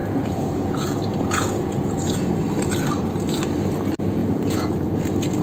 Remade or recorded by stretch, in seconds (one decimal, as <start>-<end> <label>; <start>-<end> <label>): 0.0-2.3 remade; 2.3-4.2 recorded; 4.2-5.0 remade; 5.0-5.4 recorded